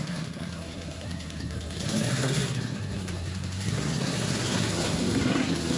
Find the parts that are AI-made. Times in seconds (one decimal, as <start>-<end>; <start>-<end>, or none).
0.0-5.8